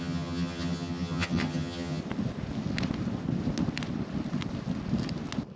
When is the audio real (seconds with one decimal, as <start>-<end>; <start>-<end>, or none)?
2.0-5.6